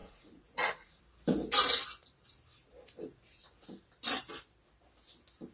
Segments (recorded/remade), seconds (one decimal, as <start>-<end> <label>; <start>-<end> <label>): 0.0-1.0 remade; 1.0-5.5 recorded